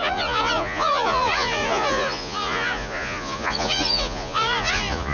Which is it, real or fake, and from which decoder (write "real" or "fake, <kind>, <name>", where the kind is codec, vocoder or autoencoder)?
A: fake, vocoder, Vocos